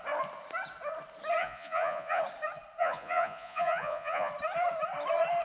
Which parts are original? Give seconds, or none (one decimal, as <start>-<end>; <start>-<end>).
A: 0.0-1.4; 2.2-2.8; 4.3-5.4